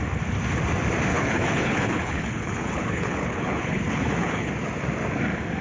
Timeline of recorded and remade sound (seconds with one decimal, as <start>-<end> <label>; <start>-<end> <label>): 0.0-1.1 recorded; 1.1-4.5 remade; 4.5-5.6 recorded